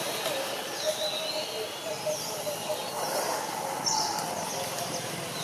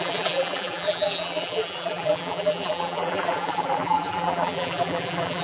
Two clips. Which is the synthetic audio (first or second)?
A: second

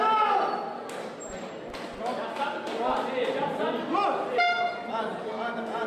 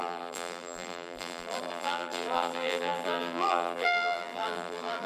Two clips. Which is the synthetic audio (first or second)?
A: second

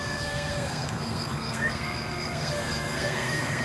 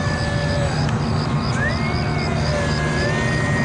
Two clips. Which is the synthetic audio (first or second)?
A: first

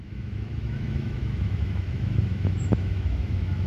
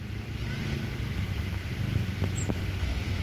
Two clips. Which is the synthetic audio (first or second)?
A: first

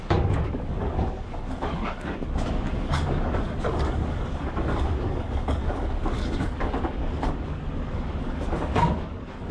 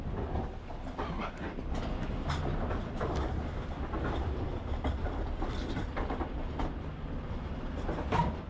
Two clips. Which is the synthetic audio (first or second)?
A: first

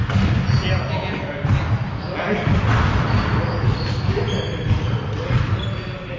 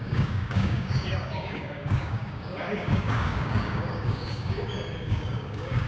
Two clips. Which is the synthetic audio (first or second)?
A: second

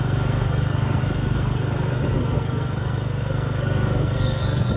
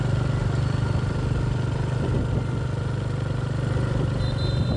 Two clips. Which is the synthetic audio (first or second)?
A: first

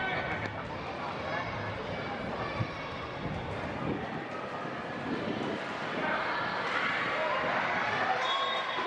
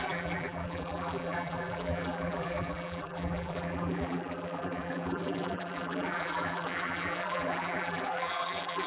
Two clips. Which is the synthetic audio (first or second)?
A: second